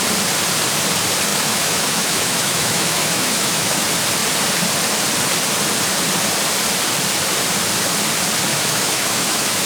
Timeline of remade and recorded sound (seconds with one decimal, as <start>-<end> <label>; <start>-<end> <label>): 0.0-1.3 recorded; 1.3-3.8 remade; 3.8-8.5 recorded; 8.5-9.7 remade